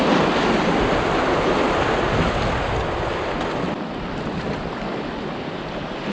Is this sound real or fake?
real